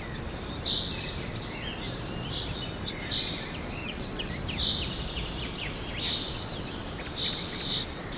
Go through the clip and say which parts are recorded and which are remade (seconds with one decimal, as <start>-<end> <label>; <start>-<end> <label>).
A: 0.0-3.8 recorded; 3.8-4.3 remade; 4.3-8.2 recorded